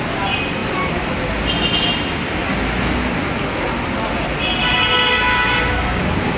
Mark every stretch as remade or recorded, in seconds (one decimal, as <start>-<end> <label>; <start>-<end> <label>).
0.0-5.3 recorded; 5.3-6.0 remade; 6.0-6.4 recorded